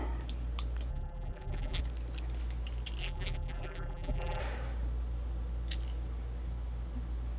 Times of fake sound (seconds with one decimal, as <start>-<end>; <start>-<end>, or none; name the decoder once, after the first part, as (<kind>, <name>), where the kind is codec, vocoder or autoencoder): 0.9-1.8 (vocoder, BigVGAN v2); 3.0-4.4